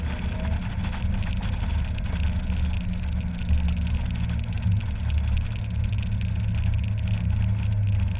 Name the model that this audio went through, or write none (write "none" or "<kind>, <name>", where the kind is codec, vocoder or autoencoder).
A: none